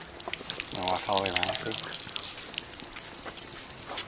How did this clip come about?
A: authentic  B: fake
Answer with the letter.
A